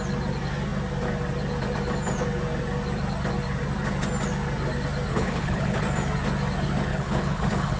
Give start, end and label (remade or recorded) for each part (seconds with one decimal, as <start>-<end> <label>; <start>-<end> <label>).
0.0-5.1 recorded; 5.1-5.8 remade; 5.8-6.9 recorded; 6.9-7.8 remade